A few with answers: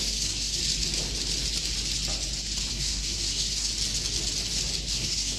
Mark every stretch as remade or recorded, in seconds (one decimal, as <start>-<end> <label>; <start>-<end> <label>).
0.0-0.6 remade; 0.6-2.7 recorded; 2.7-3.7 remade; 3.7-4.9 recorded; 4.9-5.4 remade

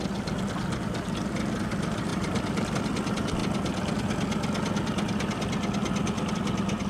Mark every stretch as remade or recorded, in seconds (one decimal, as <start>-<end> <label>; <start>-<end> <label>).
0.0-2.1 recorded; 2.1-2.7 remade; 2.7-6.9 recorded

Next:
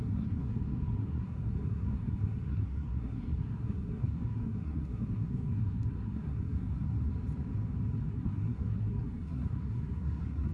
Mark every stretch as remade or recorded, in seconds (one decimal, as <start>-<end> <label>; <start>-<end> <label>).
0.0-7.1 remade; 7.1-8.1 recorded; 8.1-10.5 remade

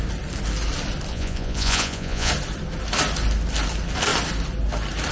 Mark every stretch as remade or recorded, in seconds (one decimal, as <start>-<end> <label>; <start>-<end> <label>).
0.0-1.1 recorded; 1.1-2.3 remade; 2.3-5.1 recorded

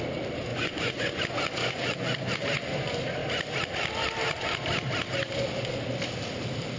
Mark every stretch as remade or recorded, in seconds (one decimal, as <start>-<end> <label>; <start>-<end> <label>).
0.0-0.5 recorded; 0.5-1.2 remade; 1.2-1.6 recorded; 1.6-2.3 remade; 2.3-6.8 recorded

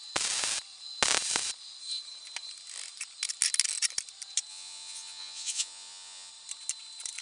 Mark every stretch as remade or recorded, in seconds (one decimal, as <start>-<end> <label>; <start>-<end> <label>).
0.0-4.5 recorded; 4.5-6.3 remade; 6.3-7.2 recorded

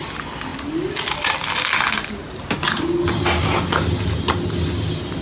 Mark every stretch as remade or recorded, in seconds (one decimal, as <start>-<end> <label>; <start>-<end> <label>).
0.0-5.2 recorded